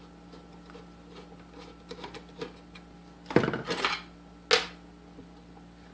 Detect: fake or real real